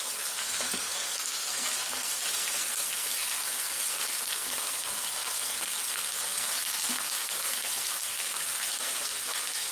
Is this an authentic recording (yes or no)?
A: no